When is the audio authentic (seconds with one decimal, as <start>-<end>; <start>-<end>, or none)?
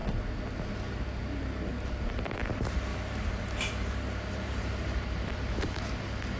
0.0-1.7; 2.4-2.9; 5.8-6.4